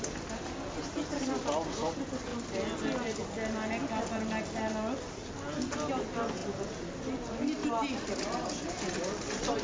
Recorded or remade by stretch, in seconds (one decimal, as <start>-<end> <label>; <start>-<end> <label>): 0.0-9.6 recorded